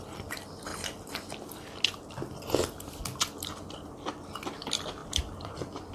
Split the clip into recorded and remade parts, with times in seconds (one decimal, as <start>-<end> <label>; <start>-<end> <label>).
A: 0.0-0.7 remade; 0.7-4.2 recorded; 4.2-5.9 remade